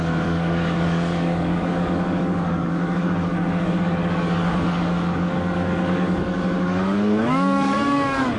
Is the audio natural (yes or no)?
no